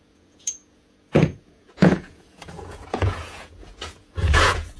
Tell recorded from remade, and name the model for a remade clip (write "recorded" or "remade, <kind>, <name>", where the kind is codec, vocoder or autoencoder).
remade, vocoder, Vocos